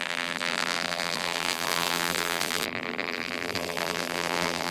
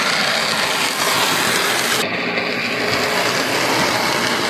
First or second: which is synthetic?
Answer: first